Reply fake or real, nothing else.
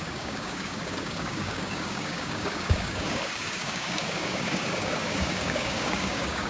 fake